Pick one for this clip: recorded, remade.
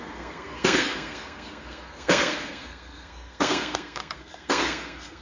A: remade